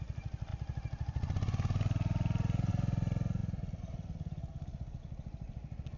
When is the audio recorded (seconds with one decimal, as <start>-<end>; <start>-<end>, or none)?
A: 0.0-6.0

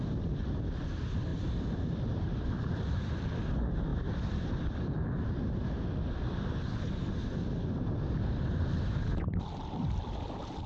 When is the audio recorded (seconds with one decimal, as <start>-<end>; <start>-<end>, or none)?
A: 0.0-1.3; 3.1-10.7

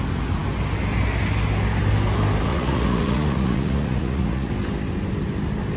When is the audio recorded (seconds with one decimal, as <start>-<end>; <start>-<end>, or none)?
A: 0.0-2.5; 4.5-5.8

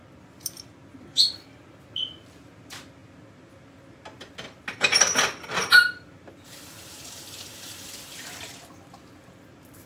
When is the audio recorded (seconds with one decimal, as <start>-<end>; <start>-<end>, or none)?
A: 0.0-9.9

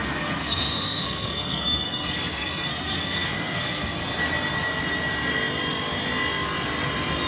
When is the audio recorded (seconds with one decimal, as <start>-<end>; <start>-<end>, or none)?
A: 4.0-7.3

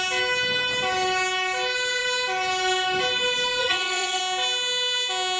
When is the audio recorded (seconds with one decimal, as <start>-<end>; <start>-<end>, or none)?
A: 0.0-3.6; 4.2-5.4

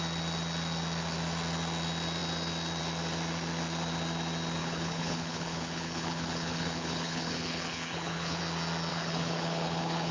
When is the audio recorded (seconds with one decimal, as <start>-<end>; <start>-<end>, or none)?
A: 0.0-4.6; 8.4-8.9

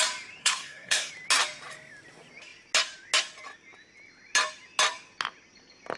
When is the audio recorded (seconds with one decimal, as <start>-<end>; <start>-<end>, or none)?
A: 0.0-0.4; 1.1-6.0